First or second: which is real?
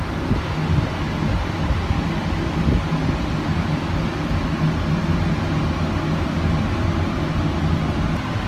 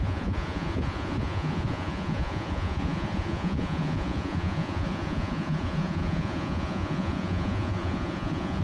first